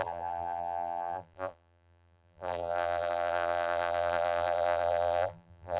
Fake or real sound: fake